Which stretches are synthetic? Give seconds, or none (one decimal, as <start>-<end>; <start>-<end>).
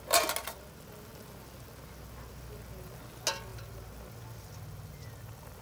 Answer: none